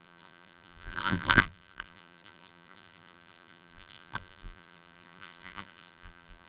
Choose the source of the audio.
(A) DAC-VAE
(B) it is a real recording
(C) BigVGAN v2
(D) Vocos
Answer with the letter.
C